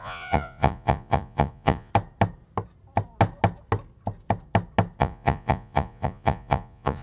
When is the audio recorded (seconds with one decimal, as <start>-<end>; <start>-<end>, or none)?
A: 1.9-5.0